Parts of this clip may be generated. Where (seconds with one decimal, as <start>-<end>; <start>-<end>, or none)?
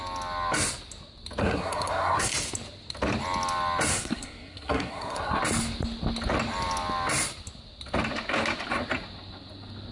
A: 1.4-2.3; 3.9-5.4